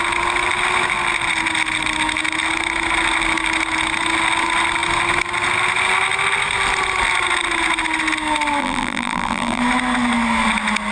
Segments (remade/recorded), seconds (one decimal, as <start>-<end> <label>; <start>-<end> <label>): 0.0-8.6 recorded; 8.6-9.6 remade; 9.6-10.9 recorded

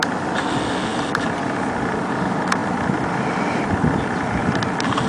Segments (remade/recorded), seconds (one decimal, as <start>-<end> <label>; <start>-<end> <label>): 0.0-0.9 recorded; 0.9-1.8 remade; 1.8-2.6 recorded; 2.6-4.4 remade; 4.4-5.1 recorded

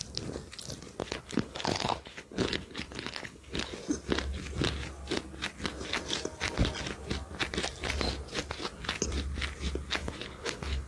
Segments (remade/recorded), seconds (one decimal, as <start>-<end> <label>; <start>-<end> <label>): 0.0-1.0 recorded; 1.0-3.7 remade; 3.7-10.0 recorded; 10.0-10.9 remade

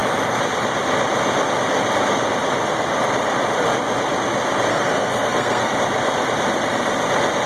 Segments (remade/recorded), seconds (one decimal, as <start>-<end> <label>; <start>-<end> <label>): 0.0-4.7 recorded; 4.7-5.7 remade; 5.7-7.5 recorded

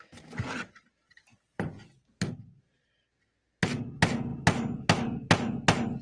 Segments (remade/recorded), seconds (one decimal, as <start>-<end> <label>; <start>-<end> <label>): 0.0-6.0 recorded

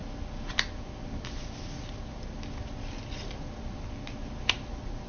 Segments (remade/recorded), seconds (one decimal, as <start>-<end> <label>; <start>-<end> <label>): 0.0-5.1 recorded